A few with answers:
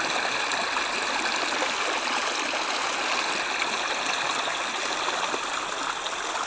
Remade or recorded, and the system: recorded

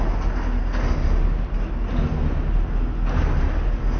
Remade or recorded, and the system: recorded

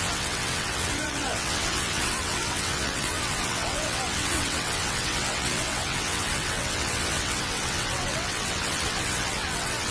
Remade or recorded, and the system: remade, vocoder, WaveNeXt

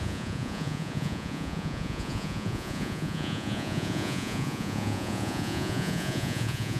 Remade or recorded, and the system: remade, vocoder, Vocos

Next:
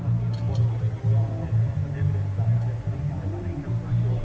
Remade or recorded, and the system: recorded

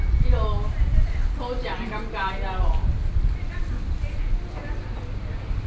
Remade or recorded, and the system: recorded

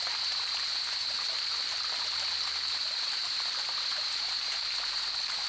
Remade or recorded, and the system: recorded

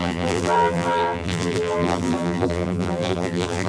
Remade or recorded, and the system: remade, vocoder, BigVGAN v2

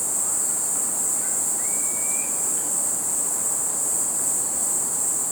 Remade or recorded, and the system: recorded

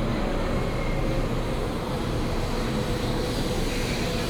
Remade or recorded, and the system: recorded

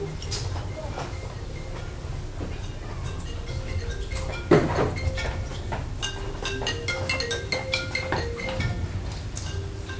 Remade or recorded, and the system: recorded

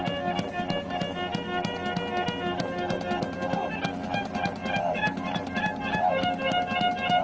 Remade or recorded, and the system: recorded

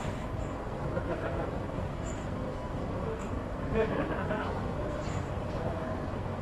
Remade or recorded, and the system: remade, codec, SNAC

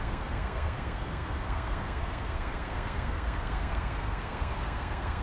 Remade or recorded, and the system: remade, codec, SNAC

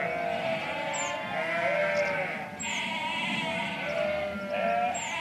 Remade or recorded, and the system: recorded